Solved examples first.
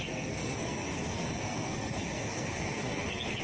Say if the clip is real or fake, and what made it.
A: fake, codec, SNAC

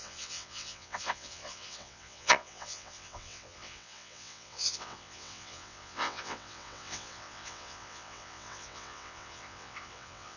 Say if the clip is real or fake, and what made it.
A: fake, vocoder, WaveNeXt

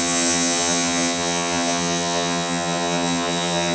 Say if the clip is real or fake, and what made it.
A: fake, vocoder, HiFi-GAN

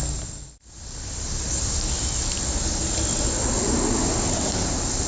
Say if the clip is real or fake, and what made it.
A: real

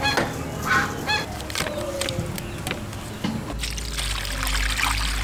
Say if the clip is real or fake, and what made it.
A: real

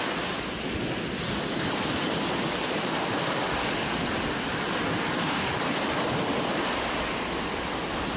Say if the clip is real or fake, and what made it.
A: real